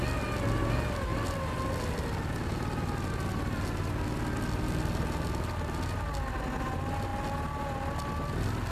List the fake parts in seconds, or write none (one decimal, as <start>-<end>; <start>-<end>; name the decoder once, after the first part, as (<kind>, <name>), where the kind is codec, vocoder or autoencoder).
none